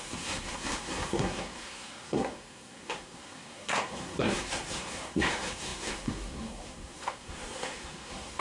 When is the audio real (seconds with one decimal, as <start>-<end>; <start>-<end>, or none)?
none